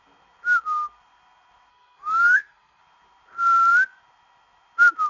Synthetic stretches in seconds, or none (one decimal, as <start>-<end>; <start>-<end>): 1.7-2.8